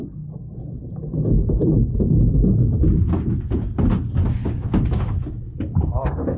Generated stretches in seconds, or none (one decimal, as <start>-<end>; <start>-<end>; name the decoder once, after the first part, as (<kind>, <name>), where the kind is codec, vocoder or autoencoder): 5.5-6.0 (codec, HILCodec)